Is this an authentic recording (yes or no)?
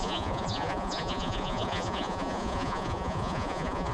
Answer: no